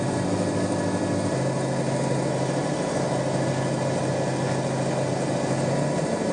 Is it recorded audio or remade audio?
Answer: recorded